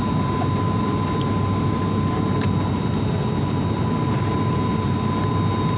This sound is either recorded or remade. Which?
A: recorded